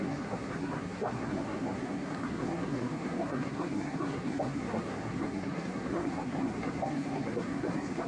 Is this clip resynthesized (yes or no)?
yes